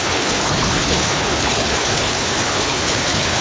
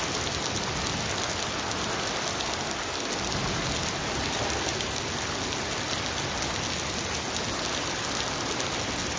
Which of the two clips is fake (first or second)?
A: first